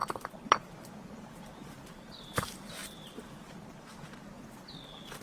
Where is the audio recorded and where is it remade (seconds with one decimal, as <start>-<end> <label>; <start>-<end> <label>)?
0.0-2.2 remade; 2.2-2.8 recorded; 2.8-3.7 remade; 3.7-5.2 recorded